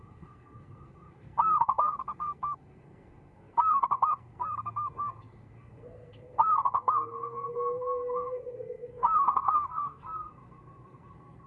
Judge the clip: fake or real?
fake